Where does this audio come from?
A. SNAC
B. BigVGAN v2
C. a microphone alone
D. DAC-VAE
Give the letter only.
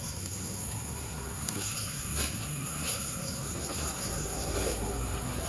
A